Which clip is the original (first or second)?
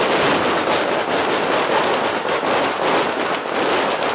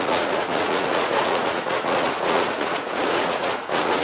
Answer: first